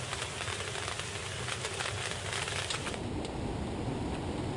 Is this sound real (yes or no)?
yes